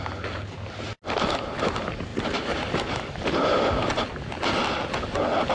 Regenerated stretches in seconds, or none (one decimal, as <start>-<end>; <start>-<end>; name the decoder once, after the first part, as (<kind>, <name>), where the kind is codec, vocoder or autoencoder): 2.1-3.7 (vocoder, BigVGAN v2)

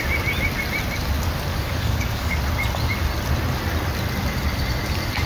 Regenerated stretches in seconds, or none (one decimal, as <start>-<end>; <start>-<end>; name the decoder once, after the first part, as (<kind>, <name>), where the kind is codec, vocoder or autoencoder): 1.5-2.4 (codec, DAC)

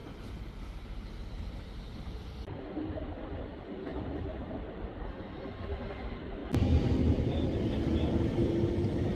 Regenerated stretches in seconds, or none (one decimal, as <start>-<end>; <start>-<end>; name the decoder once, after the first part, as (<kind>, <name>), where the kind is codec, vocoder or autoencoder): none

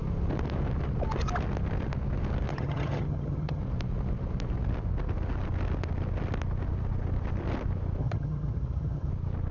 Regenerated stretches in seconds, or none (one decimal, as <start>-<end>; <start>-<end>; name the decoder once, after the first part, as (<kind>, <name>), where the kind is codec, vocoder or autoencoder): 2.5-3.6 (vocoder, HiFi-GAN); 8.0-9.1

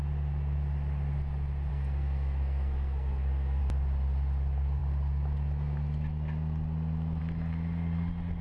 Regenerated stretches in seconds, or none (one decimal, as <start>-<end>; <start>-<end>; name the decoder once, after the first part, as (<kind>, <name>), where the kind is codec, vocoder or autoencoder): 1.7-3.6 (codec, SNAC)